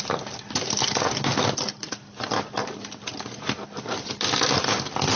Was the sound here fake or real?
real